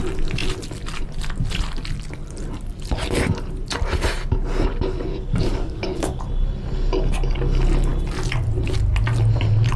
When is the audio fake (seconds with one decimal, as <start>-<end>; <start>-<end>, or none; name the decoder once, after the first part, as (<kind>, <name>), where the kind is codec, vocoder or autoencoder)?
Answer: 5.1-6.2 (codec, DAC)